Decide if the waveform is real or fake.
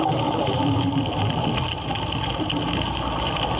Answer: real